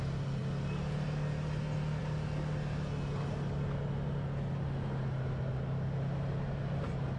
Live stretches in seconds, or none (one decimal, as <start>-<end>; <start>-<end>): 0.0-7.2